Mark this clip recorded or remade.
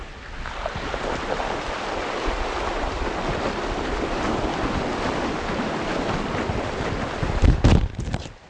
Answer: recorded